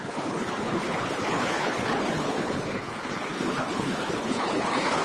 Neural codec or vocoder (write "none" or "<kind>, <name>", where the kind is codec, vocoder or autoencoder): codec, HILCodec